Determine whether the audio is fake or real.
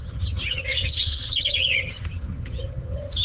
fake